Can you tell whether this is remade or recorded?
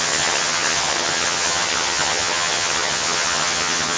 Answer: remade